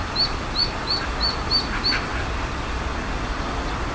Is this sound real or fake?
real